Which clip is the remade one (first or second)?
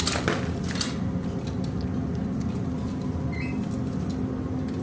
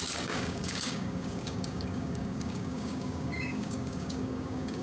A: second